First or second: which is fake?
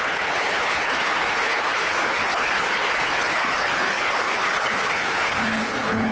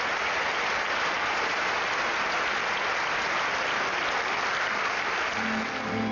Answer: first